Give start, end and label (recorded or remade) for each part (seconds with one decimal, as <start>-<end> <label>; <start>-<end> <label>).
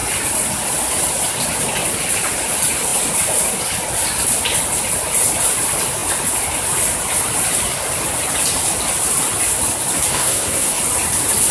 0.0-10.1 recorded; 10.1-10.8 remade; 10.8-11.5 recorded